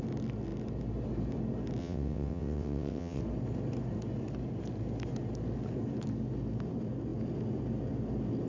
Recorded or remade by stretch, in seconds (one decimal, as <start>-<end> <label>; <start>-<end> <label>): 0.0-1.8 recorded; 1.8-3.2 remade; 3.2-8.5 recorded